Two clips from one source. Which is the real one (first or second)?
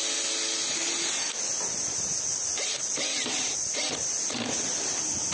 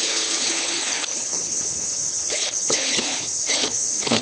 first